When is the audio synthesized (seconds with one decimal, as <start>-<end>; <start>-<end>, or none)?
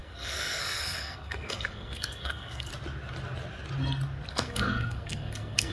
0.0-2.7; 4.3-5.7